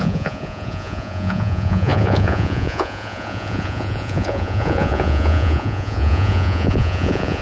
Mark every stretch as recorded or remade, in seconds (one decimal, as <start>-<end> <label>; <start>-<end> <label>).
0.0-7.4 remade